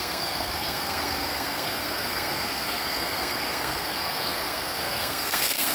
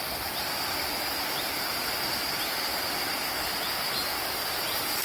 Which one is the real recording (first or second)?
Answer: second